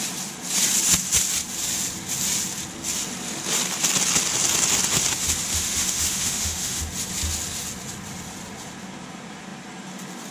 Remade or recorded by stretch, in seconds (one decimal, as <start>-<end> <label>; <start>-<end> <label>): 0.0-5.5 recorded; 5.5-6.8 remade; 6.8-10.3 recorded